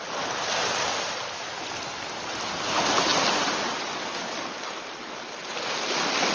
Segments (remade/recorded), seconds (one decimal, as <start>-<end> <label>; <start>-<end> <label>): 0.0-6.3 recorded